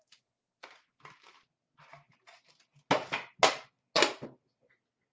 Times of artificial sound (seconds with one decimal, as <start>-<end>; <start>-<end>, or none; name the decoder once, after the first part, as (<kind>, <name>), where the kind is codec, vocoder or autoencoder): none